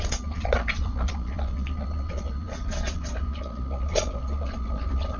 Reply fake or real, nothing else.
fake